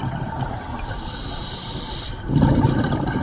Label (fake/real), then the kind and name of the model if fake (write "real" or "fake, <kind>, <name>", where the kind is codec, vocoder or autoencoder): real